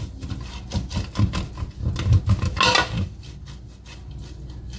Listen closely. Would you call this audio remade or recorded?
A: recorded